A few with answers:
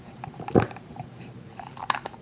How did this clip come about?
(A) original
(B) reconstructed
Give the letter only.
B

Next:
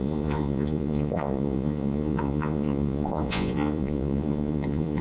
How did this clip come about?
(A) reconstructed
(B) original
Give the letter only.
A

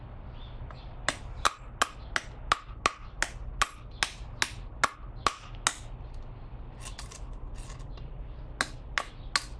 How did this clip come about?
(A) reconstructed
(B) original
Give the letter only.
B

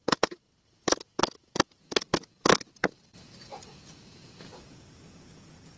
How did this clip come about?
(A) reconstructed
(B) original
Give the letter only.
A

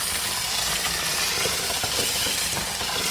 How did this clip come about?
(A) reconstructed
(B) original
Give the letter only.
A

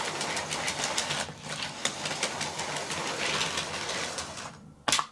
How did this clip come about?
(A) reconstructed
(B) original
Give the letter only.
B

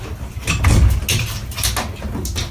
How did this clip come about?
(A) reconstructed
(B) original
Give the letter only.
B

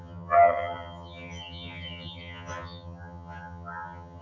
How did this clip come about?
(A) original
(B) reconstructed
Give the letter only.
B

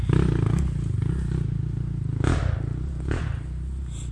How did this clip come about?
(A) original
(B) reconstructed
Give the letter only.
A